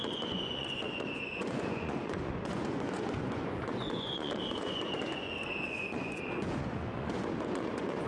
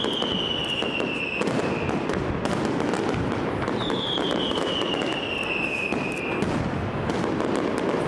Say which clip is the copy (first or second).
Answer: first